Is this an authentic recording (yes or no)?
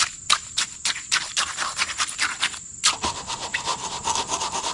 yes